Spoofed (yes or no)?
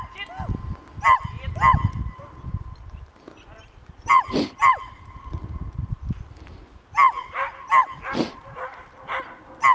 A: no